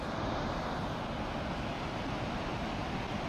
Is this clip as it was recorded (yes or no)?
yes